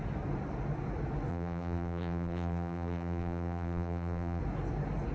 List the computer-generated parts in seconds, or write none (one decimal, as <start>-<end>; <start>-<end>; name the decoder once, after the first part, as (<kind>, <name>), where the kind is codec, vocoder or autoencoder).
1.3-4.4 (vocoder, BigVGAN v2)